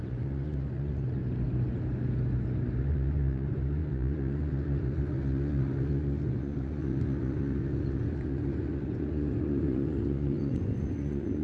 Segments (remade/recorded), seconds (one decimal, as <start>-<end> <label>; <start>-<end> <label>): 0.0-1.2 remade; 1.2-2.8 recorded; 2.8-11.4 remade